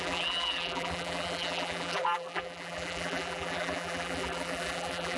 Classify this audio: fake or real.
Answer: fake